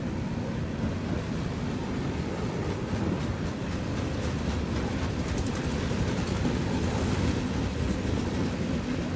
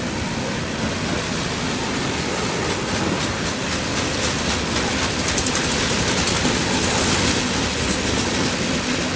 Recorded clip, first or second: second